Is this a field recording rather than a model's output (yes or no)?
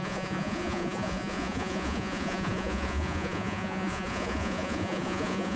no